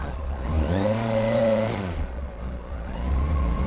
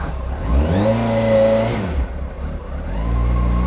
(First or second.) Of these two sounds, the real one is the second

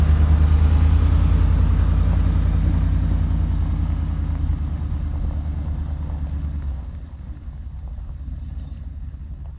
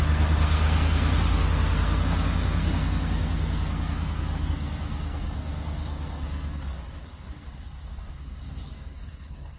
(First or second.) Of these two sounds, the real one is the first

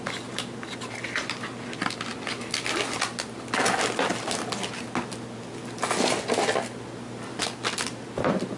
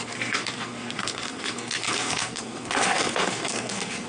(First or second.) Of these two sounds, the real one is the first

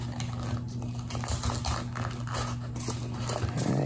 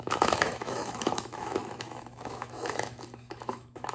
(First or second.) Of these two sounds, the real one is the first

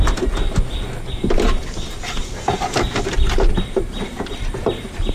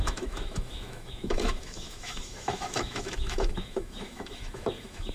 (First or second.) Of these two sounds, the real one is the first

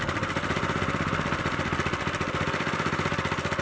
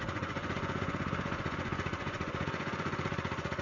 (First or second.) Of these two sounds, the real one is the first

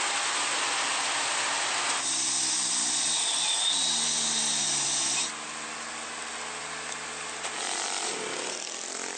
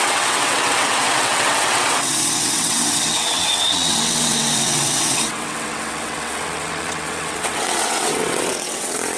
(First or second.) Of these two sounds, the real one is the first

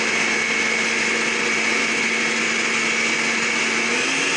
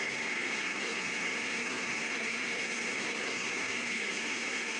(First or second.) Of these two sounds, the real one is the first